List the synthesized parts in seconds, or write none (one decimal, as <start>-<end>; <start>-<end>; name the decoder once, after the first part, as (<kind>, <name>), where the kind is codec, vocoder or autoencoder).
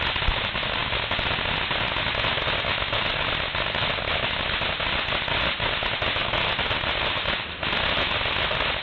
none